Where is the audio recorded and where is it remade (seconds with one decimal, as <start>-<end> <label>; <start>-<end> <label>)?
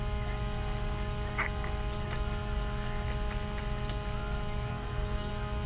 0.0-4.7 recorded; 4.7-5.3 remade; 5.3-5.7 recorded